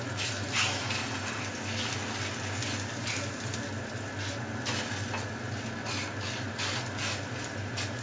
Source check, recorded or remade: recorded